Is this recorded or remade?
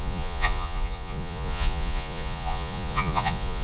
remade